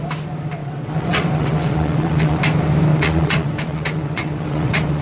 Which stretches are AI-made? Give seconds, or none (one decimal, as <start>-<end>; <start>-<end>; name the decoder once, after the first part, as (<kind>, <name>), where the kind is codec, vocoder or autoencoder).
0.6-2.4 (vocoder, WaveNeXt); 2.9-5.0